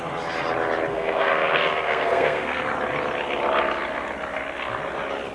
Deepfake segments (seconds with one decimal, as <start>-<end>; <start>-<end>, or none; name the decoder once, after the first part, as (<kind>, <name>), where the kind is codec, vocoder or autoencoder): 0.9-2.6 (codec, SNAC)